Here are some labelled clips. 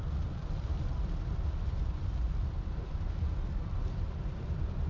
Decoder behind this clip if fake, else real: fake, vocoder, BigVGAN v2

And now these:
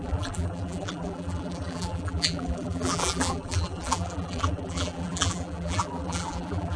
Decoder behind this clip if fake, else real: fake, vocoder, BigVGAN v2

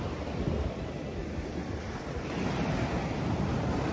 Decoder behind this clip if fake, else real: fake, vocoder, BigVGAN v2